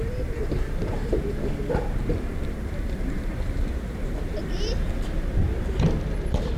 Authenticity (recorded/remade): remade